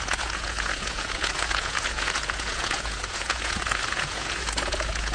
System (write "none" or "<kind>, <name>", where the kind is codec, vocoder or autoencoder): vocoder, Vocos